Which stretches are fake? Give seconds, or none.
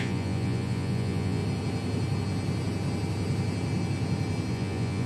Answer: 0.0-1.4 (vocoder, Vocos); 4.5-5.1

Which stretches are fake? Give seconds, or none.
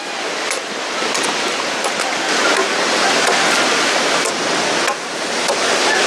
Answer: none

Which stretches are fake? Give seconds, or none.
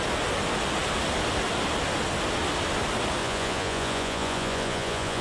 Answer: 3.2-5.2 (vocoder, Vocos)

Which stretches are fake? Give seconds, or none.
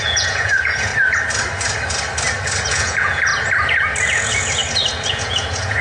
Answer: 0.0-0.9 (vocoder, Vocos); 2.7-3.3; 4.1-4.6; 5.1-5.8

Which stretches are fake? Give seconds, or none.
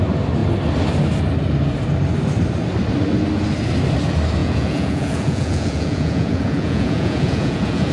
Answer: 4.4-7.9 (vocoder, Vocos)